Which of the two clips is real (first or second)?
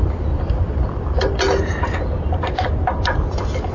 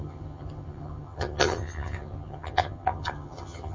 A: first